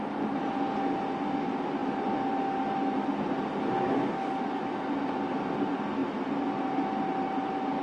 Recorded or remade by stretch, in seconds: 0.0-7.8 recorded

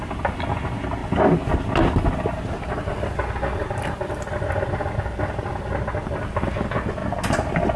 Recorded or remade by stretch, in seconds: 0.0-7.8 recorded

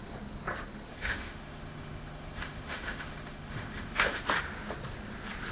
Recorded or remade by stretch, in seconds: 0.0-0.9 recorded; 0.9-4.2 remade; 4.2-5.5 recorded

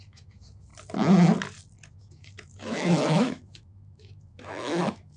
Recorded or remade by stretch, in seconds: 0.0-0.7 remade; 0.7-1.9 recorded; 1.9-5.2 remade

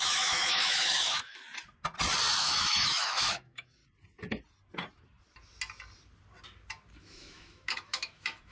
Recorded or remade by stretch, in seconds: 0.0-1.4 remade; 1.4-2.4 recorded; 2.4-3.8 remade; 3.8-7.0 recorded; 7.0-8.5 remade